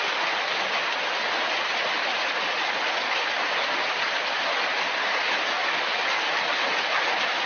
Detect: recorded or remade recorded